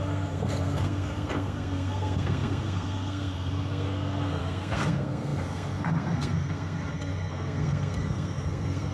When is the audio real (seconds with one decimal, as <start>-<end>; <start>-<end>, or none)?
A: none